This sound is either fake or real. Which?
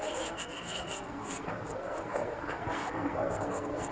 fake